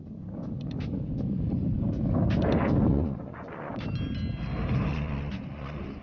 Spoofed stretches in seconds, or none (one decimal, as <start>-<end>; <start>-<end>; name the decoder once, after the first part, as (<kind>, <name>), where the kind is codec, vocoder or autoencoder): 2.9-3.7 (vocoder, Vocos); 4.9-6.0